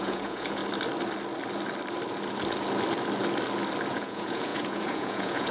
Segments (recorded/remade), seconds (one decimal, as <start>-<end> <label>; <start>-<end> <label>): 0.0-0.6 remade; 0.6-3.9 recorded; 3.9-5.5 remade